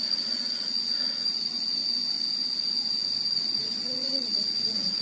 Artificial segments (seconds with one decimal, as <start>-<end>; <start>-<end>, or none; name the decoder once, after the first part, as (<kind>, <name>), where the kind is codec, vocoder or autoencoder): 0.0-1.8 (vocoder, Vocos); 3.3-5.0